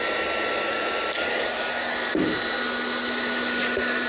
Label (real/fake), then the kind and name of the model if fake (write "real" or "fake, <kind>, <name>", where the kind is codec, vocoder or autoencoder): real